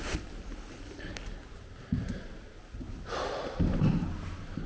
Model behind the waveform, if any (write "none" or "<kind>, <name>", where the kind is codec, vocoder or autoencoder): none